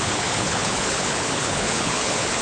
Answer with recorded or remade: remade